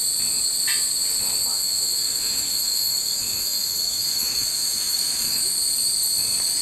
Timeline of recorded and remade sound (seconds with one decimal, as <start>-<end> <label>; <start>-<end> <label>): 0.0-1.4 recorded; 1.4-5.4 remade; 5.4-6.6 recorded